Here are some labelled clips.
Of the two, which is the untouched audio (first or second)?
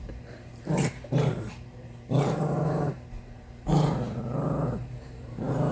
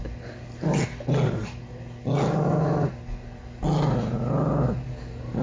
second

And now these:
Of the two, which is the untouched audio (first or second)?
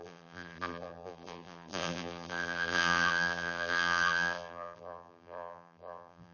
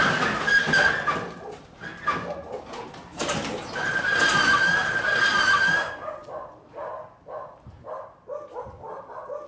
second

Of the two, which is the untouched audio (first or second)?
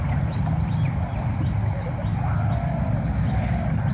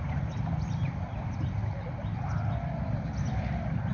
first